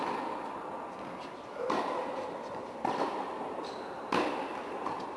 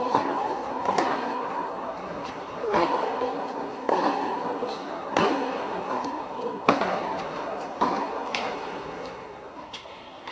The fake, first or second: second